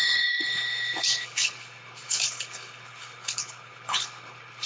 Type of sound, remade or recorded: remade